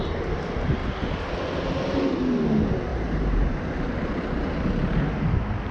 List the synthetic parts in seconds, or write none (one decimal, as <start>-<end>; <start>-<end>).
0.8-1.3; 2.9-4.7